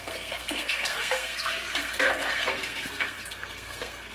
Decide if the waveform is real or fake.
fake